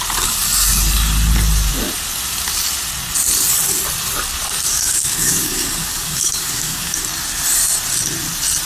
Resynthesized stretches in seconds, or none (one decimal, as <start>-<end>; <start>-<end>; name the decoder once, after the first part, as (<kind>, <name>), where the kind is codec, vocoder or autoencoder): 4.7-7.0 (codec, DAC)